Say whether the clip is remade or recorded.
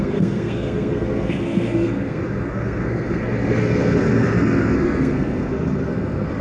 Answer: remade